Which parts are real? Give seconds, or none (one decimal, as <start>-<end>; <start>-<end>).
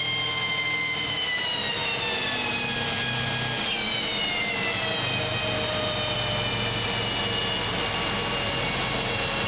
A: 0.0-9.5